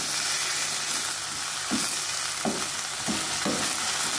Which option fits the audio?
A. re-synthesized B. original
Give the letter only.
B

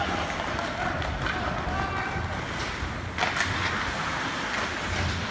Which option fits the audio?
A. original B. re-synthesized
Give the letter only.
A